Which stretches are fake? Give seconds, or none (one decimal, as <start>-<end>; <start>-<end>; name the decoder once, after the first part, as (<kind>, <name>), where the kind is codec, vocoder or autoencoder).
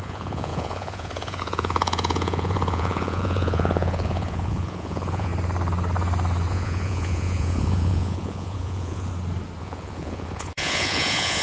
0.0-5.3 (vocoder, Vocos); 6.5-9.1; 9.6-11.4